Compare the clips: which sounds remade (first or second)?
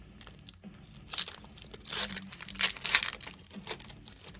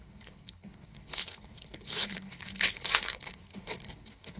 second